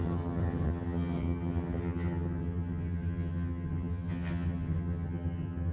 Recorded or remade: remade